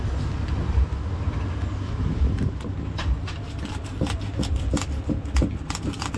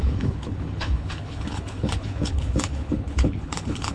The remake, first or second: second